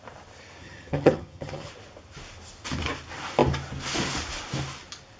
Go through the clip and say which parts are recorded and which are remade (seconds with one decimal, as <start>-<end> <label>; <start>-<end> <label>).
0.0-0.6 recorded; 0.6-1.7 remade; 1.7-5.2 recorded